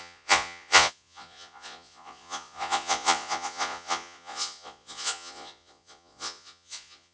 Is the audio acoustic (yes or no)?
no